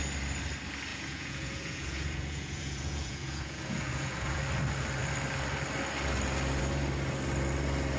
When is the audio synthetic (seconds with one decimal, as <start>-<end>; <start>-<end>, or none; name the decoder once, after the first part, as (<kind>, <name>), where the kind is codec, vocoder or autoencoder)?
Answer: 0.9-4.4 (vocoder, Vocos)